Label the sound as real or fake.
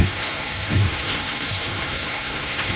fake